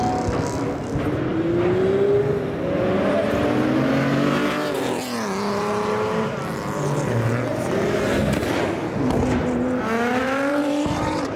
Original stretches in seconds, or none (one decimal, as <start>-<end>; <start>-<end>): 0.0-10.2